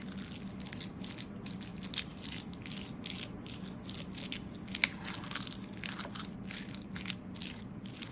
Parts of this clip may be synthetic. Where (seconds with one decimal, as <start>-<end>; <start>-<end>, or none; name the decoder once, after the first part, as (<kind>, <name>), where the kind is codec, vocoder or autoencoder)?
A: none